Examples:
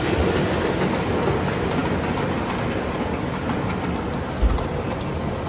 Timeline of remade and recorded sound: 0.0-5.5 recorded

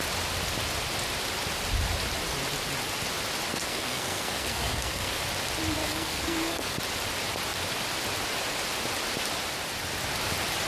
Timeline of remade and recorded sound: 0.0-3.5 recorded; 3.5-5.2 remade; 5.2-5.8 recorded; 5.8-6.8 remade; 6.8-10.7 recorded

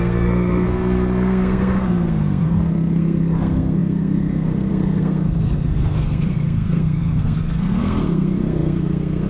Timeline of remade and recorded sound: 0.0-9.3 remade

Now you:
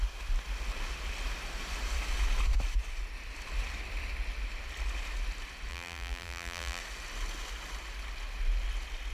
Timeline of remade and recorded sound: 0.0-5.7 recorded; 5.7-6.8 remade; 6.8-9.1 recorded

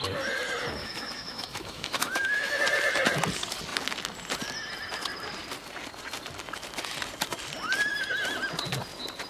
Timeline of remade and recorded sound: 0.0-0.8 recorded; 0.8-2.6 remade; 2.6-9.3 recorded